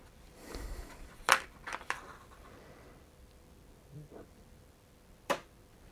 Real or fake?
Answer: fake